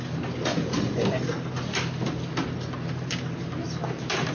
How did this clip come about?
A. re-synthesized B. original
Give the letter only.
B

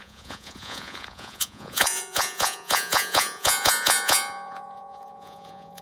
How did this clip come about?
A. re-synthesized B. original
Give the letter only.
A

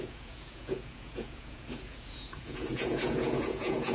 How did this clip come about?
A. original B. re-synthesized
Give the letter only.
B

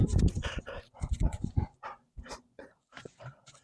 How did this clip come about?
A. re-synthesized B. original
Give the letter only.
A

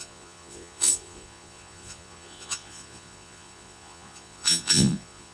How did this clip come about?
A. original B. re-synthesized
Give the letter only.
B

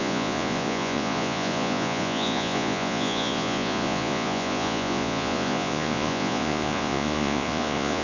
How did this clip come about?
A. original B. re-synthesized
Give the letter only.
B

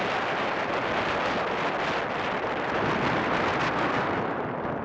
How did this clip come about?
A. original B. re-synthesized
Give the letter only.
A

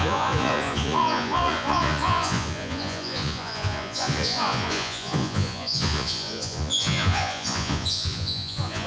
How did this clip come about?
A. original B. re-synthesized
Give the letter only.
B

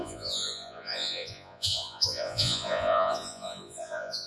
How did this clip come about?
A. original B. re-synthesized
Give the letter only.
B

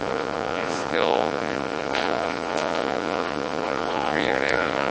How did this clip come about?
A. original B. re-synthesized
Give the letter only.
B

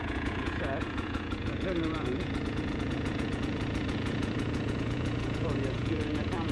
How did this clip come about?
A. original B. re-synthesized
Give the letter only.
B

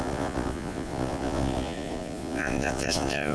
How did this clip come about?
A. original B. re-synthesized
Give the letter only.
B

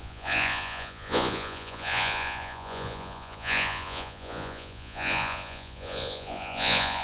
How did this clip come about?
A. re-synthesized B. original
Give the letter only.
A